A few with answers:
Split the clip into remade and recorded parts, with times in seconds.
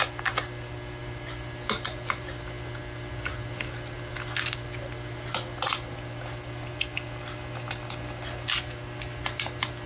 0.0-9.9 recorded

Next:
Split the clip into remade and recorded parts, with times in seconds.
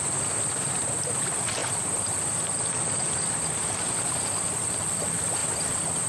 0.0-1.6 recorded; 1.6-2.1 remade; 2.1-6.1 recorded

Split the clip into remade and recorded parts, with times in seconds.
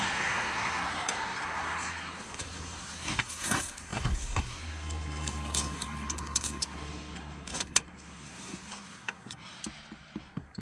0.0-9.6 remade; 9.6-10.2 recorded; 10.2-10.6 remade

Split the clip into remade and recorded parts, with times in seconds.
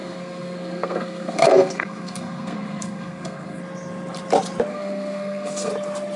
0.0-3.6 remade; 3.6-4.7 recorded; 4.7-5.7 remade; 5.7-6.2 recorded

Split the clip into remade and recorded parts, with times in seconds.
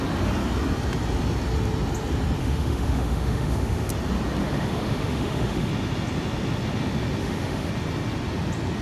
0.0-2.4 recorded; 2.4-3.9 remade; 3.9-4.4 recorded; 4.4-5.7 remade; 5.7-7.2 recorded; 7.2-7.7 remade; 7.7-8.8 recorded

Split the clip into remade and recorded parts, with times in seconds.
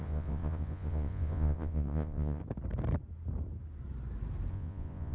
0.0-2.4 remade; 2.4-4.5 recorded; 4.5-5.1 remade